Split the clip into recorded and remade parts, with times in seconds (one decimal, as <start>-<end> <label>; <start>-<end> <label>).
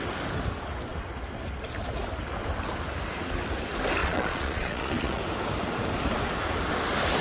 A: 0.0-4.0 recorded; 4.0-5.2 remade; 5.2-7.2 recorded